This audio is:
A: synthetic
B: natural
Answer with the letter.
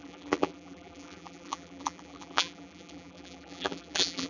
A